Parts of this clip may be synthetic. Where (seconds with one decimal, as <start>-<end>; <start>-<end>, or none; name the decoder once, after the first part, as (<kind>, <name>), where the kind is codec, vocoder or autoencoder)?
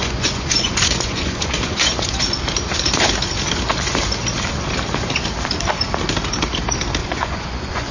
0.0-2.2 (vocoder, Vocos); 7.0-7.9